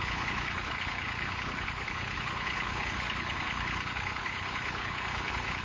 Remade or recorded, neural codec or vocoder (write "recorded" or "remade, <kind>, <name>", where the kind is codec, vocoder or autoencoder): remade, codec, HILCodec